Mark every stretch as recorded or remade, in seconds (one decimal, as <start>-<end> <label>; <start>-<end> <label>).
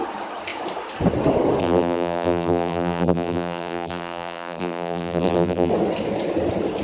0.0-1.6 recorded; 1.6-5.7 remade; 5.7-6.8 recorded